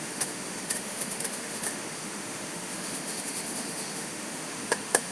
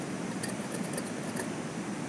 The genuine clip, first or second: second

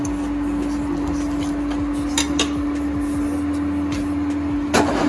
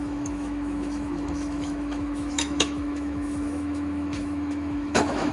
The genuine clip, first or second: first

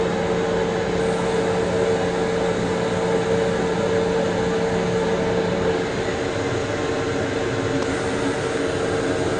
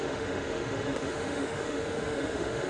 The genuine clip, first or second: first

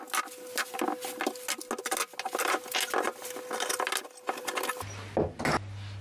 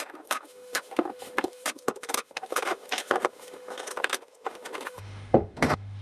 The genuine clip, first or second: first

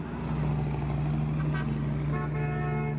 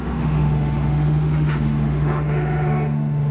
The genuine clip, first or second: first